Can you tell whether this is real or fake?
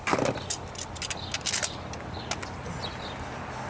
real